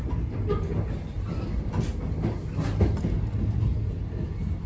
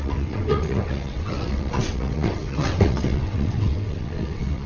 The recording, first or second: first